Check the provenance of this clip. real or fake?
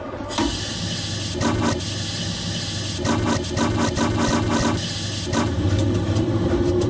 real